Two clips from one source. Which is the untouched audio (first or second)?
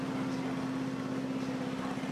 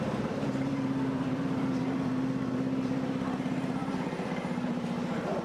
first